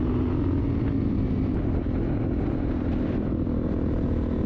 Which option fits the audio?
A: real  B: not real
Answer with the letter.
A